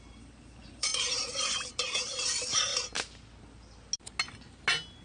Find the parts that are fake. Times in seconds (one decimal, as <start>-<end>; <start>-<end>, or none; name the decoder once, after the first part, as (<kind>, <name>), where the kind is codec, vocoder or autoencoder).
0.0-2.7 (vocoder, BigVGAN v2)